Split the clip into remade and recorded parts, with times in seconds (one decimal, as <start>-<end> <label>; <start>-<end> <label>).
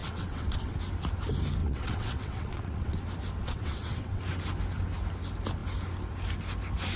0.0-0.8 remade; 0.8-1.6 recorded; 1.6-3.0 remade; 3.0-3.4 recorded; 3.4-4.2 remade; 4.2-7.0 recorded